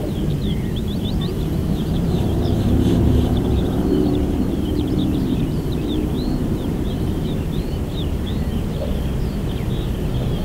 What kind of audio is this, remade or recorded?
remade